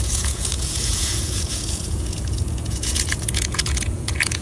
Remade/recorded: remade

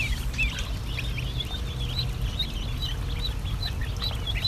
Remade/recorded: recorded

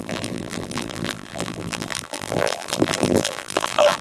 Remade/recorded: remade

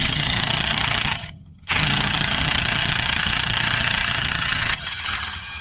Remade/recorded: remade